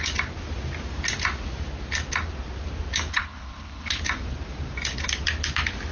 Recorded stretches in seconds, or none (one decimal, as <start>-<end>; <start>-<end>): 0.0-3.1; 4.0-5.9